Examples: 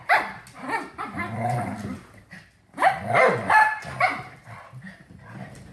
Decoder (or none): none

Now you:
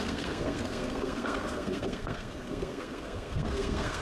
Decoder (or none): codec, SNAC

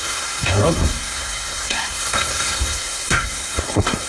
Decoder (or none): codec, SNAC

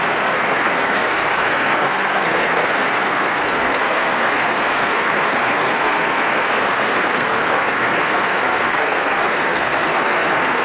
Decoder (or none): codec, SNAC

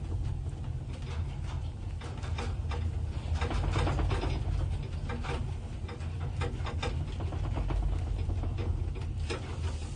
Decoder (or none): none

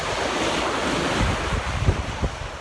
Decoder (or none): none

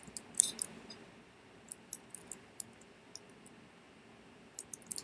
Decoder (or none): none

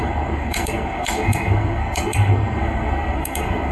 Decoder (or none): codec, SNAC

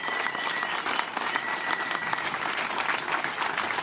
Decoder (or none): none